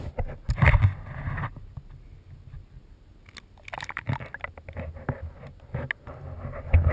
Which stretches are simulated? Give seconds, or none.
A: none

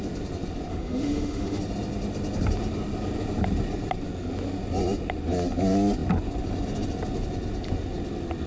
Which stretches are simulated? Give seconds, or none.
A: 0.7-1.6

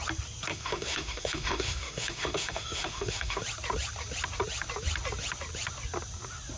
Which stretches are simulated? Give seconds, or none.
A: 0.5-3.4

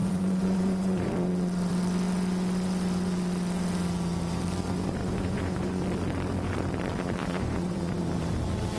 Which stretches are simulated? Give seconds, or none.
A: 0.0-1.1; 5.0-5.8; 7.2-8.0

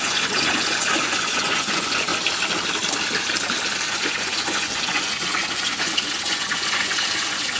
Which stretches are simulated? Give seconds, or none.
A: 0.0-2.1; 3.9-7.6